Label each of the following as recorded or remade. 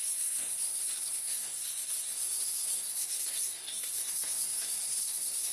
remade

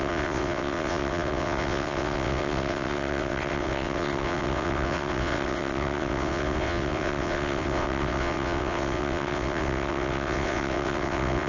remade